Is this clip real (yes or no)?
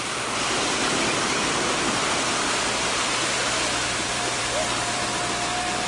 no